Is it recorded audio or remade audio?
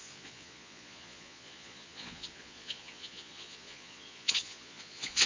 remade